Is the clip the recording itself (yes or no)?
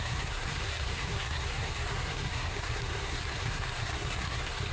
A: no